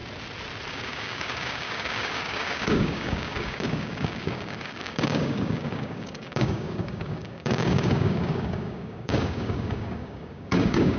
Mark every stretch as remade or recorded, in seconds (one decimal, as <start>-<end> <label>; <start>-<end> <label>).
0.0-0.7 recorded; 0.7-11.0 remade